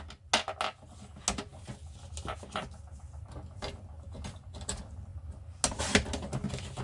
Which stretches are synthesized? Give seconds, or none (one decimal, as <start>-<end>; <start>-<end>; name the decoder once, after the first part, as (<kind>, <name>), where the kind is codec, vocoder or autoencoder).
none